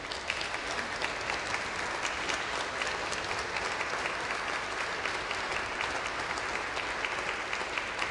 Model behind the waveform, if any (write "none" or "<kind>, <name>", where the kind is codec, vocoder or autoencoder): none